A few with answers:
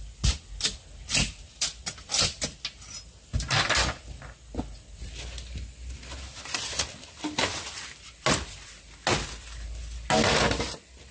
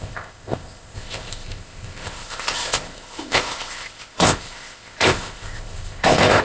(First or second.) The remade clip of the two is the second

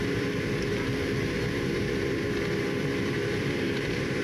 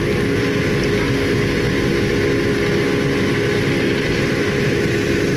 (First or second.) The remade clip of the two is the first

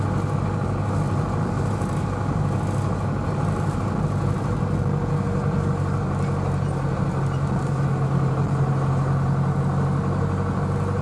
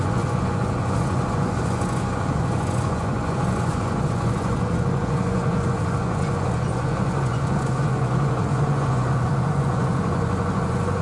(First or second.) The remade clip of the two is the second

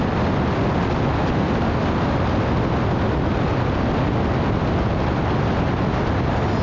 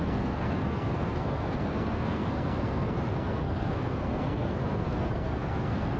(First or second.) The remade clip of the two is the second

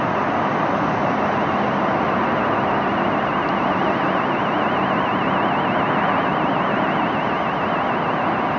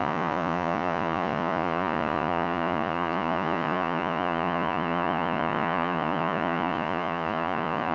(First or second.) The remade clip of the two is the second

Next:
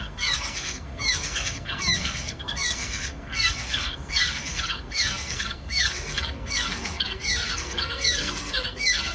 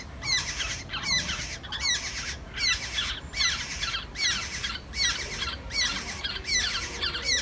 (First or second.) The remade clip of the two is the first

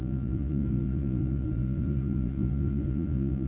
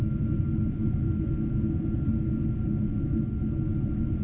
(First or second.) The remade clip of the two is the first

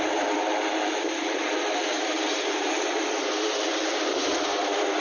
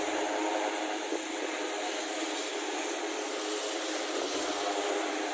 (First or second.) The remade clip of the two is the first